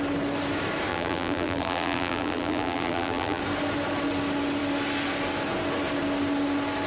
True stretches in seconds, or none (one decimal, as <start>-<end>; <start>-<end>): 0.0-0.9; 3.4-6.9